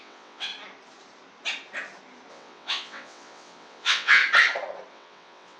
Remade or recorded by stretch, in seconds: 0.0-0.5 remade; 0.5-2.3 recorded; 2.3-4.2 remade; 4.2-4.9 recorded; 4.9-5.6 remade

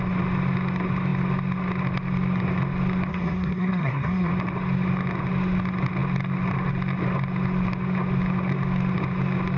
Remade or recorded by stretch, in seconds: 0.0-3.1 recorded; 3.1-4.3 remade; 4.3-9.6 recorded

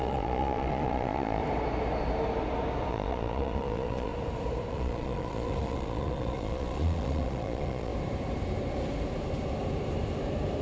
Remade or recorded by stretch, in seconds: 0.0-1.4 remade; 1.4-2.9 recorded; 2.9-4.1 remade; 4.1-4.7 recorded; 4.7-7.9 remade; 7.9-10.6 recorded

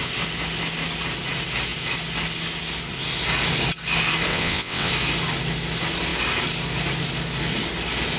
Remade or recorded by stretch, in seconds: 0.0-4.3 recorded; 4.3-4.9 remade; 4.9-8.2 recorded